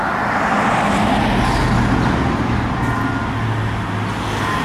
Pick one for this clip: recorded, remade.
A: recorded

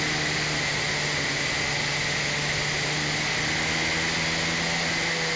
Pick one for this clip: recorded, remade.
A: recorded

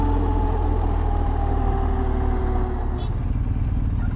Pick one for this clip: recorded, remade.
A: recorded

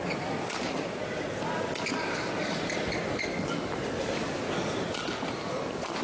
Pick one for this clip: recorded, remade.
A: recorded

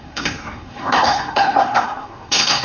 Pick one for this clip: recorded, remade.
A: remade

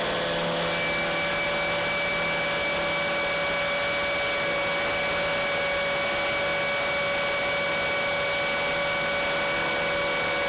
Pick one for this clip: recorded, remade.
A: recorded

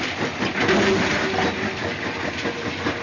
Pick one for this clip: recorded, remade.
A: recorded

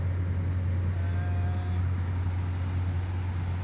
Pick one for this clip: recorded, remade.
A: recorded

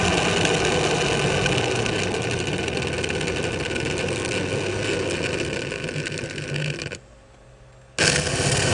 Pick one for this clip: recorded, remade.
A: recorded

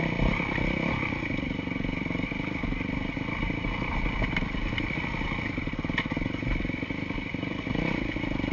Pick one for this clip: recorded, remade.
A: remade